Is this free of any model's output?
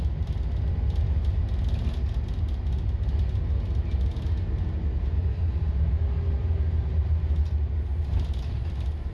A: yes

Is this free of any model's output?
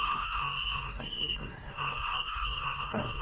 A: no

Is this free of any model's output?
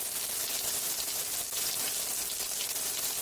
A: yes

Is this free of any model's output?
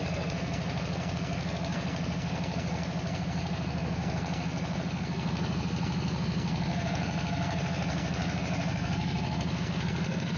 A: no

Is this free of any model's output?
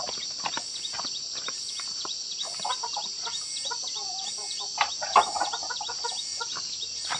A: yes